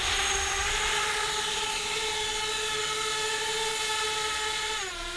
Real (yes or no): yes